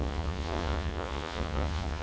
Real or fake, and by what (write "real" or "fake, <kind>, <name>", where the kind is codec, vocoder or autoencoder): fake, vocoder, Vocos